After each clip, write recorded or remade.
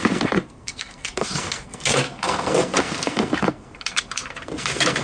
remade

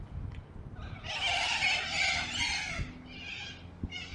recorded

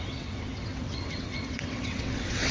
remade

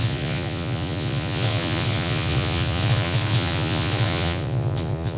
remade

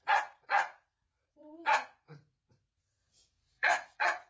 remade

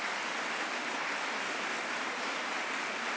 recorded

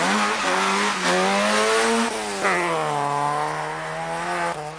recorded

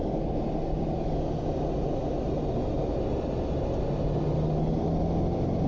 recorded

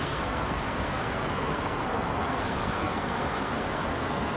remade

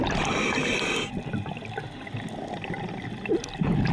recorded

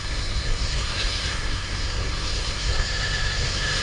remade